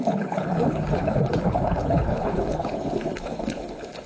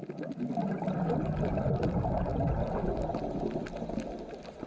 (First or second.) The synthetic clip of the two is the first